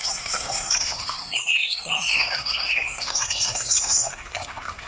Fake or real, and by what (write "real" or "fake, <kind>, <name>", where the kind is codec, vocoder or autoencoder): fake, codec, SNAC